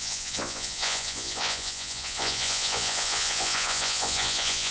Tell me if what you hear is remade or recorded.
remade